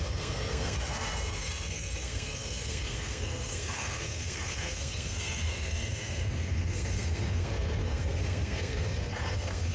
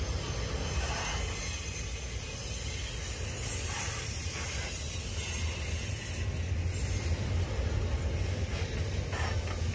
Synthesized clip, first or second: first